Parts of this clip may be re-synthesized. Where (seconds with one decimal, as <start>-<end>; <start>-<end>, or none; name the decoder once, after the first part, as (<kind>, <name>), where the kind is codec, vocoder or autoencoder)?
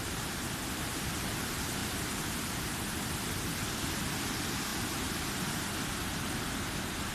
0.9-1.4 (vocoder, BigVGAN v2); 1.8-2.7